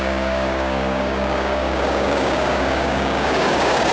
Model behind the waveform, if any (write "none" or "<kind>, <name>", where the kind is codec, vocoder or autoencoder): codec, DAC